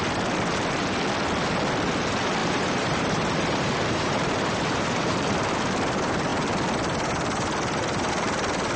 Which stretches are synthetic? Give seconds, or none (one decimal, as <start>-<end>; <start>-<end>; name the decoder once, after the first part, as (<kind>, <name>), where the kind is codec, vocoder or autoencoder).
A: 2.4-5.6 (vocoder, BigVGAN v2)